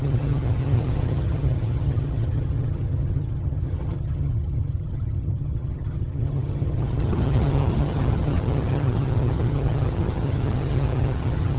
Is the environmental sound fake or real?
fake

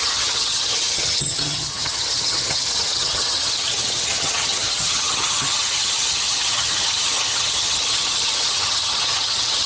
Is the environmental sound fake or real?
fake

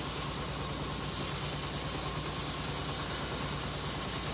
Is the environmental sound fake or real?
real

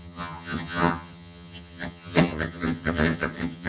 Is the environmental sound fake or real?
fake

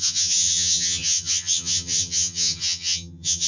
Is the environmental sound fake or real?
fake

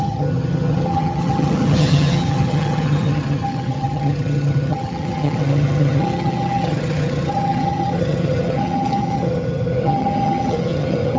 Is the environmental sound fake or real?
fake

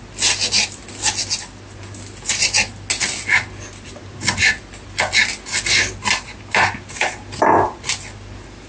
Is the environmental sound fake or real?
real